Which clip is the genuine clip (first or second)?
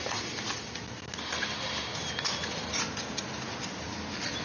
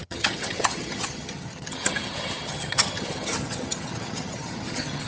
first